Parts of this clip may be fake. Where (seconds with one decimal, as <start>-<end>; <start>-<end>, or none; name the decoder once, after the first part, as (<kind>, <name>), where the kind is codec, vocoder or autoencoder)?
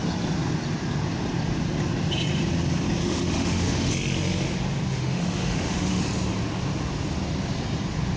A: 3.0-3.9 (autoencoder, DAC-VAE); 4.9-6.0